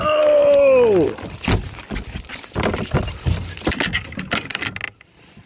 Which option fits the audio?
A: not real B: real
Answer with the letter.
B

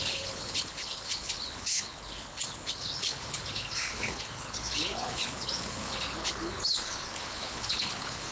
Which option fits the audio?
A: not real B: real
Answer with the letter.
A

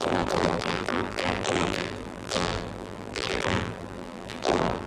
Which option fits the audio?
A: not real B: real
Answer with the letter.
A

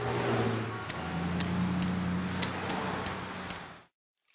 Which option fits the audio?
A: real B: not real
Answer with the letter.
A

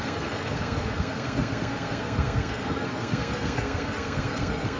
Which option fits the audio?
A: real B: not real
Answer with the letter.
B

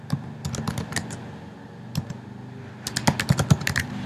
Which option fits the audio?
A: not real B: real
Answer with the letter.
B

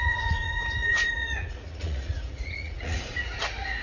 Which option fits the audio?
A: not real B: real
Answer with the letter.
A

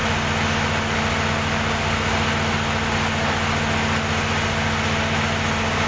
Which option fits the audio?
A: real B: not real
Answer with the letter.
A